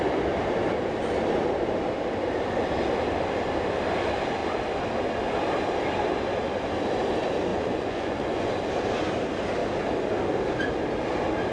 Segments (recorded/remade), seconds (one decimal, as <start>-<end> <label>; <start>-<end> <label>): 0.0-7.5 recorded; 7.5-8.5 remade; 8.5-11.5 recorded